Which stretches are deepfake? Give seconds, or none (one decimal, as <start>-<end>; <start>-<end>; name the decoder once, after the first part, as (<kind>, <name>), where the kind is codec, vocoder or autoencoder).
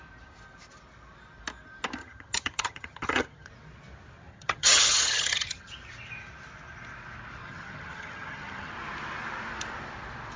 2.0-3.5 (vocoder, HiFi-GAN); 4.3-5.7; 7.4-8.7